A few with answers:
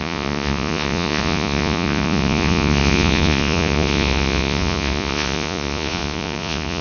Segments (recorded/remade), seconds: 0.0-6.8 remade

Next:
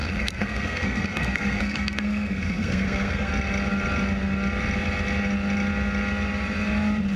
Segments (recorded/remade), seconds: 0.0-3.3 remade; 3.3-7.2 recorded

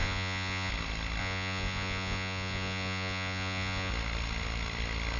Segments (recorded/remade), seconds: 0.0-0.7 remade; 0.7-1.2 recorded; 1.2-3.9 remade; 3.9-5.2 recorded

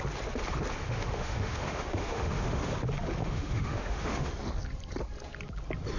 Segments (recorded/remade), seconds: 0.0-0.8 recorded; 0.8-2.7 remade; 2.7-3.2 recorded; 3.2-4.3 remade; 4.3-6.0 recorded

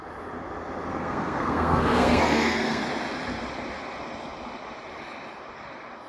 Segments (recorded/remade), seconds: 0.0-0.9 recorded; 0.9-2.8 remade; 2.8-6.1 recorded

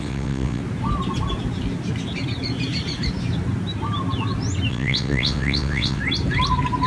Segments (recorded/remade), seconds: 0.0-0.6 remade; 0.6-4.7 recorded; 4.7-6.0 remade; 6.0-6.9 recorded

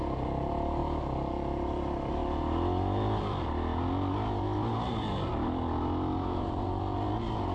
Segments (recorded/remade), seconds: 0.0-7.5 recorded